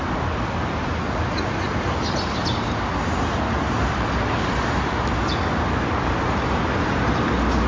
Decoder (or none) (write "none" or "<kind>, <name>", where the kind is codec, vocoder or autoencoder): none